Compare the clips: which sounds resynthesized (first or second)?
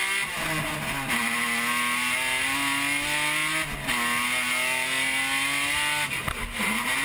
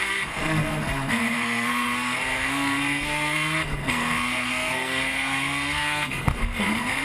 second